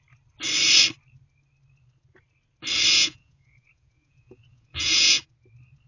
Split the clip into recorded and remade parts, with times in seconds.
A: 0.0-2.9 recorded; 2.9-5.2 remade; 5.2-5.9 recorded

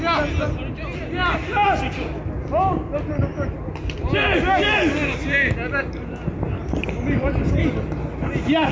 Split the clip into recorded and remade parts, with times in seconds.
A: 0.0-8.7 recorded

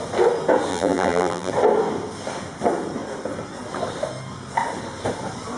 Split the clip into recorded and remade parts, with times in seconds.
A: 0.0-0.7 recorded; 0.7-1.5 remade; 1.5-5.6 recorded

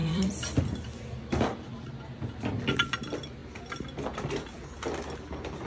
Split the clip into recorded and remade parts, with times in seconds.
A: 0.0-0.6 remade; 0.6-5.7 recorded

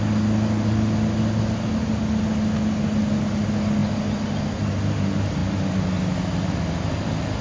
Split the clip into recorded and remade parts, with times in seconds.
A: 0.0-7.4 recorded

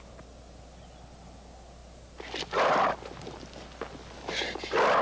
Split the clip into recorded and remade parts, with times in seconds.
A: 0.0-5.0 recorded